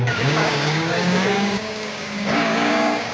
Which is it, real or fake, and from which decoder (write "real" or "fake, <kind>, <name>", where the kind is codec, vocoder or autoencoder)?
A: fake, codec, DAC